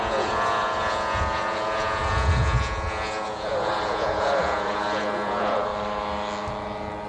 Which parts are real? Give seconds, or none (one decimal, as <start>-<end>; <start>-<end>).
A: 5.7-7.1